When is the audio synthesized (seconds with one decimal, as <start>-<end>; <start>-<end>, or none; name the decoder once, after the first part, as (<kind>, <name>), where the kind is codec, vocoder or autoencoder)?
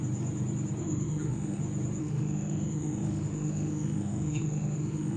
0.8-1.6 (autoencoder, DAC-VAE); 2.0-5.2